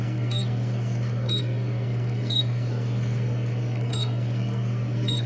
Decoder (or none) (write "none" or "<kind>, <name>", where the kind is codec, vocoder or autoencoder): codec, SNAC